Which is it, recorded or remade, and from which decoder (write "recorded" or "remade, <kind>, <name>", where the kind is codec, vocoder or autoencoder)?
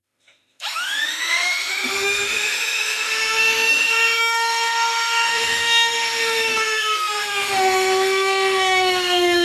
remade, autoencoder, DAC-VAE